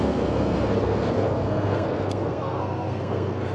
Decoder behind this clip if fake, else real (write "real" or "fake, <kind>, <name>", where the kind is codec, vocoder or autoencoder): fake, codec, SNAC